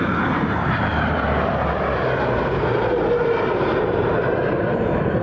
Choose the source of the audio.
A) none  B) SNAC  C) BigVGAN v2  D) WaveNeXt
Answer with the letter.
C